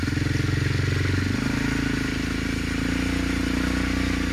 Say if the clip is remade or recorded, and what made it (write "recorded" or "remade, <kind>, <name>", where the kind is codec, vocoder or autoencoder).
recorded